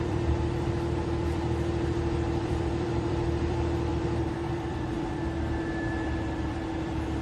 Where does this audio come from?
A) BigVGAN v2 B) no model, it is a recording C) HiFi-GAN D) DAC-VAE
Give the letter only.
A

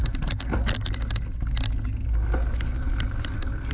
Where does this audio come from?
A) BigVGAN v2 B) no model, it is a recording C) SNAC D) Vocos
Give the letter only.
B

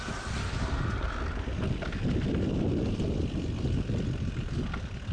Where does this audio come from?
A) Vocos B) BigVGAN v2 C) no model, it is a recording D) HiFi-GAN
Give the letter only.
C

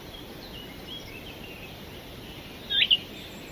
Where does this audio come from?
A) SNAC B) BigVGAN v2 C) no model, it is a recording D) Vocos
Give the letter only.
B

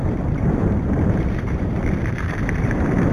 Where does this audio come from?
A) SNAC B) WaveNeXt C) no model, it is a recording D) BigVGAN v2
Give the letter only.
D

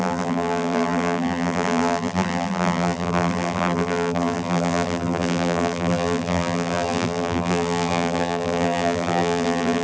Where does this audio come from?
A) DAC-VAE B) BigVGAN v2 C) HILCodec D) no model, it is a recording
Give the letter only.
B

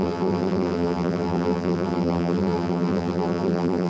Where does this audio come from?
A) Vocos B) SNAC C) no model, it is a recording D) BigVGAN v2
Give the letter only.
D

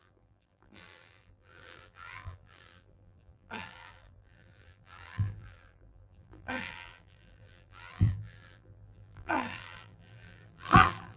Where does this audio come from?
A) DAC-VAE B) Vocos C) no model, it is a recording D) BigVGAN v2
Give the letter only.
D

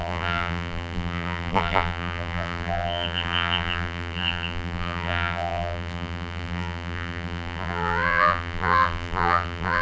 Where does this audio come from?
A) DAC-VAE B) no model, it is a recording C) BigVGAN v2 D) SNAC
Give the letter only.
C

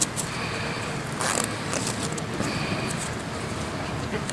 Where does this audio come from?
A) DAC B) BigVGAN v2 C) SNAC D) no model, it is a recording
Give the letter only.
B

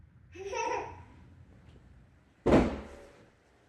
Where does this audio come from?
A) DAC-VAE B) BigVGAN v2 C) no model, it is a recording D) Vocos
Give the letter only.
B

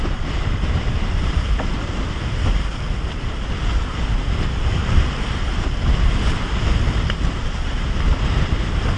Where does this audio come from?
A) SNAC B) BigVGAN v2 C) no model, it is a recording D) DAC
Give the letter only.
B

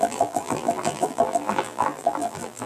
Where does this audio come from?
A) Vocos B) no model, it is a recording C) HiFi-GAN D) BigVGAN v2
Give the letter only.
D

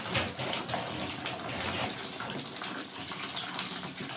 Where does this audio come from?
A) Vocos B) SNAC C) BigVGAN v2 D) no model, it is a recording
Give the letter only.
D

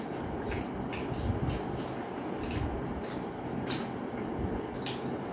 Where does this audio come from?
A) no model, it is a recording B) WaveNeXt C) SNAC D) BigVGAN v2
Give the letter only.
A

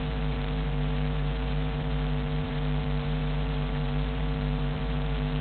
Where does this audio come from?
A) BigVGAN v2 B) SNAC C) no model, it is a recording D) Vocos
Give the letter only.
A